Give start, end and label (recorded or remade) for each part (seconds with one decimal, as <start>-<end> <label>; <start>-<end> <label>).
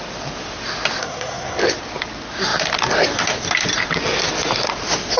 0.0-1.0 recorded; 1.0-1.6 remade; 1.6-5.2 recorded